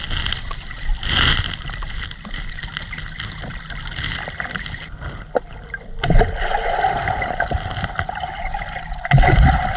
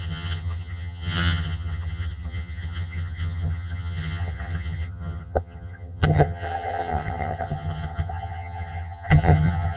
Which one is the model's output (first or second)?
second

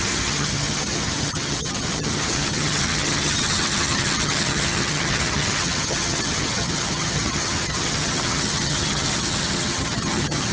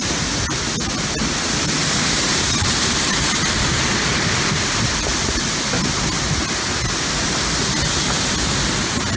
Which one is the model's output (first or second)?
first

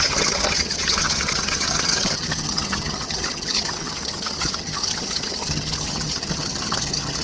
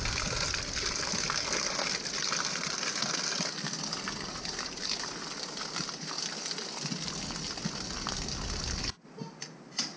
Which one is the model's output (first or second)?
first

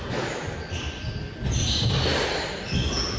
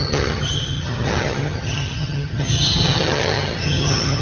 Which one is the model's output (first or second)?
second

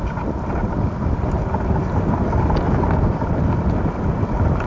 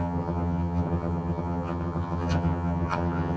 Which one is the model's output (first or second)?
second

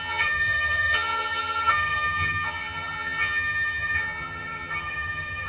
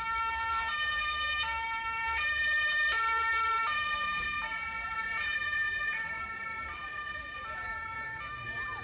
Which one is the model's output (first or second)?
first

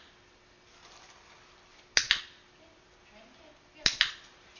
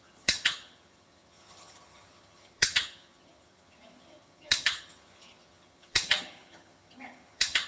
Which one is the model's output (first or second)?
second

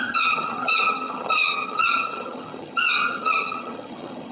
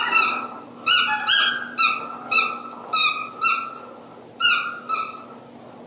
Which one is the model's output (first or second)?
first